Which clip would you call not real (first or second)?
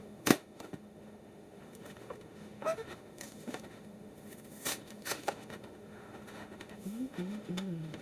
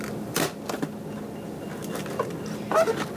first